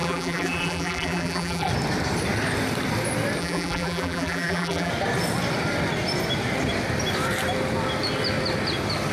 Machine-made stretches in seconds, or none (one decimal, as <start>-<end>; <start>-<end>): 0.0-1.7; 3.4-4.9